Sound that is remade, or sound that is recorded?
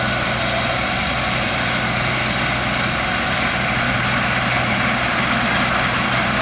recorded